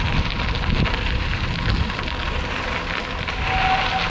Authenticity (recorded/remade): recorded